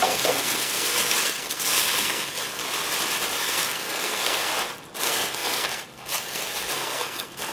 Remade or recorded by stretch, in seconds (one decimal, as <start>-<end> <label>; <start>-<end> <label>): 0.0-2.6 remade; 2.6-3.4 recorded; 3.4-4.5 remade; 4.5-5.0 recorded; 5.0-7.5 remade